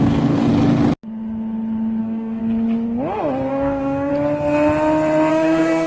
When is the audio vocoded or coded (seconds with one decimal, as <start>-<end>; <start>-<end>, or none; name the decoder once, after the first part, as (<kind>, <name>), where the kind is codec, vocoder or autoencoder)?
0.0-0.5 (codec, DAC); 2.0-2.4; 3.5-4.1; 5.3-5.9